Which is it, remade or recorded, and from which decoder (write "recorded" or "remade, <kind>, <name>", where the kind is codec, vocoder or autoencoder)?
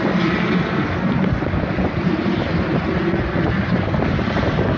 remade, vocoder, BigVGAN v2